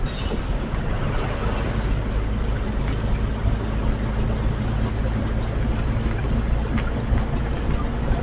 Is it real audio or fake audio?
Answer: real